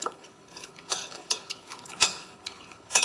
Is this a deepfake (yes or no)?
yes